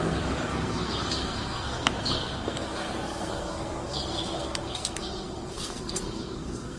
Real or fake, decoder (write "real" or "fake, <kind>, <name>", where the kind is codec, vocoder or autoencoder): fake, codec, SNAC